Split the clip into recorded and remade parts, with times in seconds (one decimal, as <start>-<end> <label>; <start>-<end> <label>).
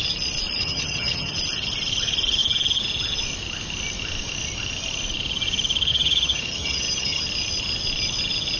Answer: 0.0-0.6 recorded; 0.6-1.4 remade; 1.4-5.9 recorded; 5.9-7.2 remade; 7.2-8.6 recorded